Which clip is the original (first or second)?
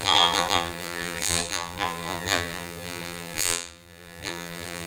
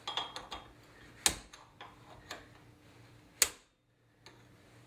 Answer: second